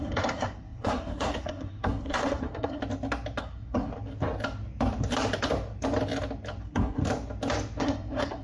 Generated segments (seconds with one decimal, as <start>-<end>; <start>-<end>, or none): 0.0-2.8; 3.4-3.9; 6.6-7.0; 7.8-8.4